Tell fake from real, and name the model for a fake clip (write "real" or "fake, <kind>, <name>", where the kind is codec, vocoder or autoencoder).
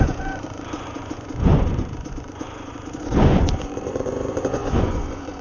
fake, vocoder, Vocos